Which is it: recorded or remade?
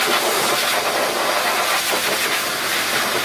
recorded